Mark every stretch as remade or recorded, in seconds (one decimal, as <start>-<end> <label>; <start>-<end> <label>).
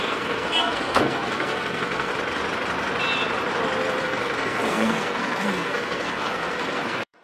0.0-2.1 remade; 2.1-4.0 recorded; 4.0-7.2 remade